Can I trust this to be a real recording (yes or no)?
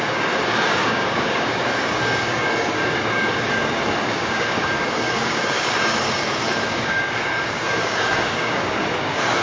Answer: no